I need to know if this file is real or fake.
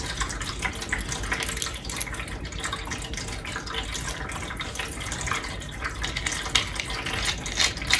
real